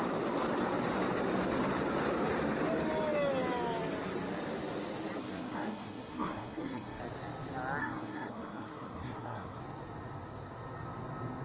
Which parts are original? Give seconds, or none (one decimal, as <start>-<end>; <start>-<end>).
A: 0.0-5.2; 7.0-7.8; 9.6-11.4